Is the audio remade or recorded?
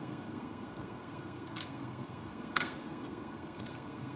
remade